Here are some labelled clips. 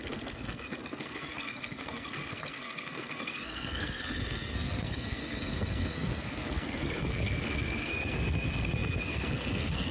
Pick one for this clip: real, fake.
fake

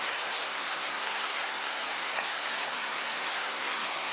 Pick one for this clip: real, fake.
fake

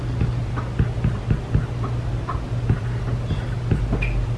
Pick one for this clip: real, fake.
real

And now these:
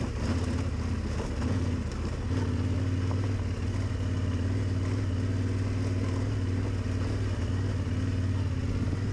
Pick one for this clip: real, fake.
real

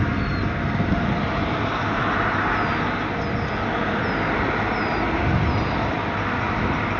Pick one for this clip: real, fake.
real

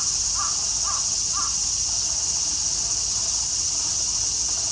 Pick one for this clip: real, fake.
real